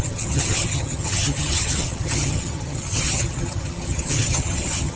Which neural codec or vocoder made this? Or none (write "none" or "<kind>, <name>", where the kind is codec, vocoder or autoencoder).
vocoder, HiFi-GAN